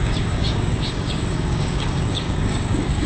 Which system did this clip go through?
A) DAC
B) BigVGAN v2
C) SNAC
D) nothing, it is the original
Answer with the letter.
A